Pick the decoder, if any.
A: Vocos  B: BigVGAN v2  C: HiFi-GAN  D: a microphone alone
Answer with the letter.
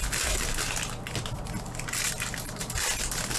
D